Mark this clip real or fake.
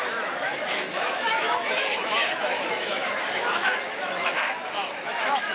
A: fake